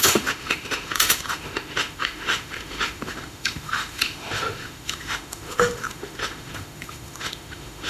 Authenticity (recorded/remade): remade